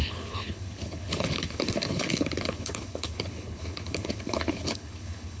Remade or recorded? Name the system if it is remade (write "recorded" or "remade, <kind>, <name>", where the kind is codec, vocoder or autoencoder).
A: remade, codec, HILCodec